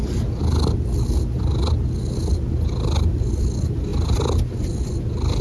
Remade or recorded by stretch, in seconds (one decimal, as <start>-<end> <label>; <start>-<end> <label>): 0.0-5.4 recorded